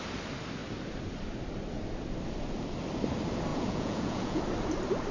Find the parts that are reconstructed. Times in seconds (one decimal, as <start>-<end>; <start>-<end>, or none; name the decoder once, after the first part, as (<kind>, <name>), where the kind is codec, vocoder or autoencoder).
3.5-4.4 (vocoder, Vocos)